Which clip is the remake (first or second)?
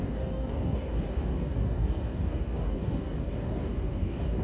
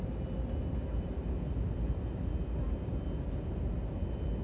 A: first